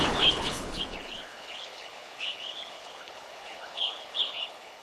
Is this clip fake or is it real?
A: fake